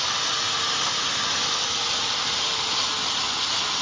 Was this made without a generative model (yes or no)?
yes